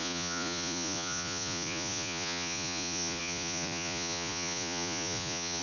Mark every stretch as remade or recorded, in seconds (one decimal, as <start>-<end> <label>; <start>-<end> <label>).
0.0-5.6 remade